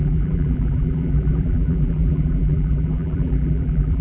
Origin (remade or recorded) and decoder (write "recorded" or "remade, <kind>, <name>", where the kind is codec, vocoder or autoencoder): remade, vocoder, BigVGAN v2